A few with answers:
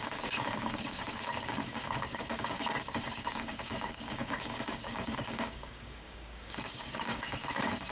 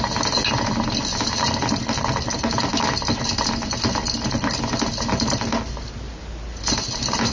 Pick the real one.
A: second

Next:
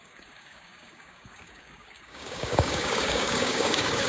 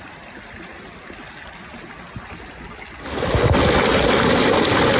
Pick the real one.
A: second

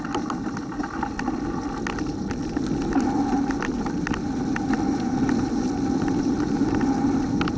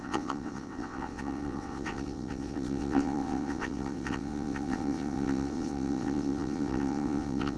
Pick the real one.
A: first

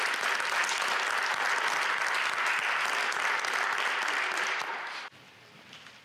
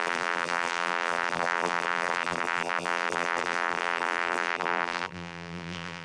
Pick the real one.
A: first